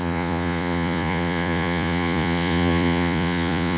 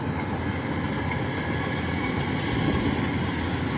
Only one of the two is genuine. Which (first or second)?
second